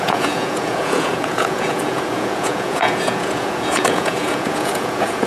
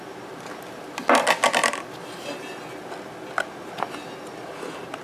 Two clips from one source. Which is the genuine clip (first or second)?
second